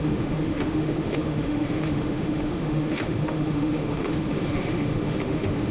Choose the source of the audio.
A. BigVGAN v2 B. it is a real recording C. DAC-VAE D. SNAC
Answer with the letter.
C